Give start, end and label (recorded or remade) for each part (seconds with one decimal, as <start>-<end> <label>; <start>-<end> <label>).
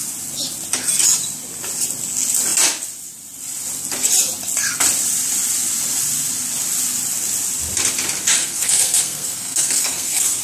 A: 0.0-8.4 recorded; 8.4-10.4 remade